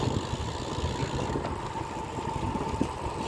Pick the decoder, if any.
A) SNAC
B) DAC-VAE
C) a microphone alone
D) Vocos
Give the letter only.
C